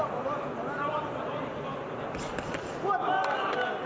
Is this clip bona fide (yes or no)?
yes